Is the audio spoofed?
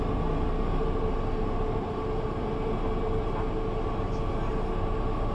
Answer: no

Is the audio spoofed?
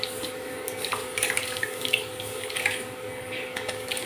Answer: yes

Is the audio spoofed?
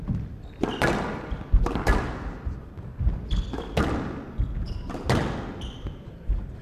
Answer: no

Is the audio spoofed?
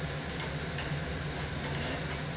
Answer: no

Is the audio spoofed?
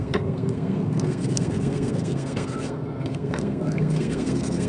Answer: yes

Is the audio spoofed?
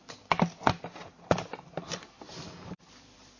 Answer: no